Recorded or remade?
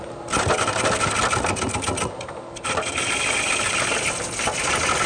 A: recorded